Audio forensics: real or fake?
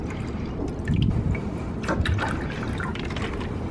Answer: real